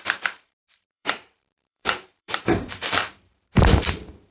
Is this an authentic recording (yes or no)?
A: no